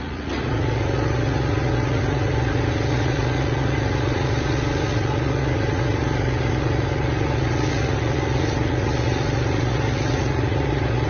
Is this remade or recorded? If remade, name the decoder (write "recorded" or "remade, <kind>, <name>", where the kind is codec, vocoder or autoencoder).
remade, vocoder, Vocos